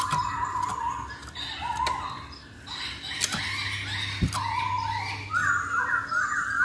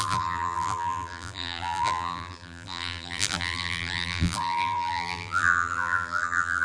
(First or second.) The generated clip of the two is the second